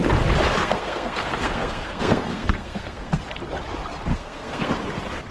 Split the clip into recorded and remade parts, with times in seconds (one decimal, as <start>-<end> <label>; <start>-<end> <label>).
0.0-0.6 recorded; 0.6-3.2 remade; 3.2-4.1 recorded; 4.1-4.7 remade; 4.7-5.3 recorded